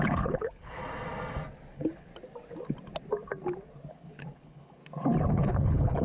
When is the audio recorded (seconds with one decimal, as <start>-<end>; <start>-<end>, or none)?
0.8-1.7; 2.1-3.9; 4.8-5.3